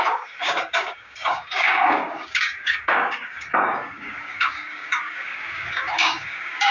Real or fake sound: fake